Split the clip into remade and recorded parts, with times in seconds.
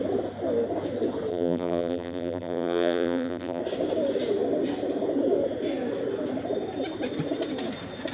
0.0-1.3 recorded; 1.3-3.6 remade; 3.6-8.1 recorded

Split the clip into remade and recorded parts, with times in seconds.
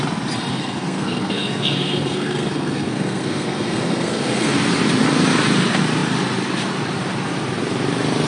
0.0-0.5 recorded; 0.5-4.6 remade; 4.6-8.3 recorded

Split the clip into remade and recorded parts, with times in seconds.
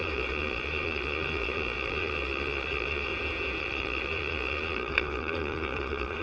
0.0-3.1 remade; 3.1-3.6 recorded; 3.6-6.2 remade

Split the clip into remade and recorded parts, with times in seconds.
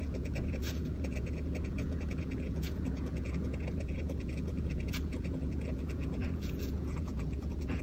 0.0-7.8 remade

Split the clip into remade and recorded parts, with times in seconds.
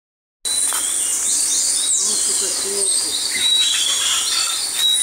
0.0-3.1 recorded; 3.1-4.6 remade; 4.6-5.0 recorded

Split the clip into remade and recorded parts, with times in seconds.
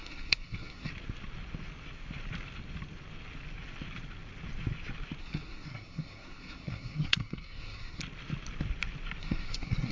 0.0-0.9 remade; 0.9-5.2 recorded; 5.2-8.0 remade; 8.0-9.2 recorded; 9.2-9.9 remade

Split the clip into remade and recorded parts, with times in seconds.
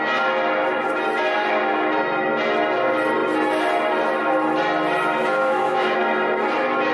0.0-5.4 recorded; 5.4-6.0 remade; 6.0-6.9 recorded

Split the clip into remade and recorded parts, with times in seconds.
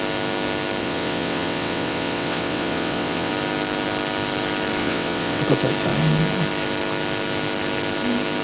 0.0-0.8 recorded; 0.8-3.3 remade; 3.3-4.8 recorded; 4.8-5.4 remade; 5.4-8.4 recorded